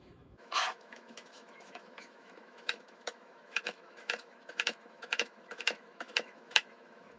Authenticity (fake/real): fake